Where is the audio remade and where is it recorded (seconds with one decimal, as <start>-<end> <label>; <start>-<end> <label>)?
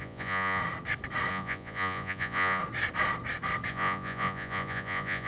0.0-0.6 remade; 0.6-1.3 recorded; 1.3-2.6 remade; 2.6-3.7 recorded; 3.7-5.3 remade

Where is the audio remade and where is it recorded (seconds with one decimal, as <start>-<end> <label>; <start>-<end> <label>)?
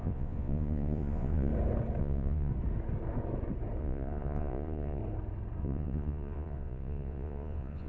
0.0-1.5 remade; 1.5-2.0 recorded; 2.0-2.5 remade; 2.5-3.8 recorded; 3.8-5.0 remade; 5.0-5.6 recorded; 5.6-7.9 remade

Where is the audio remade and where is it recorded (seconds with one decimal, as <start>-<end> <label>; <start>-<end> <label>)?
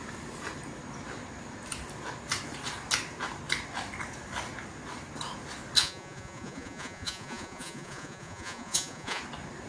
0.0-5.8 recorded; 5.8-9.2 remade; 9.2-9.7 recorded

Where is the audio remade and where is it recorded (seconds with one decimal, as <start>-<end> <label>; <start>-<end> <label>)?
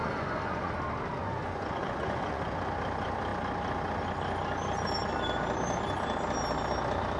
0.0-0.7 remade; 0.7-1.2 recorded; 1.2-2.4 remade; 2.4-7.2 recorded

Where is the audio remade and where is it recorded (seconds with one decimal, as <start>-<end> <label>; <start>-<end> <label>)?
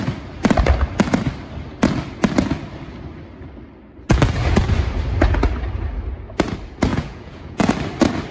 0.0-6.9 recorded; 6.9-7.7 remade; 7.7-8.3 recorded